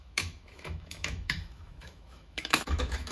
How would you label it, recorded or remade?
remade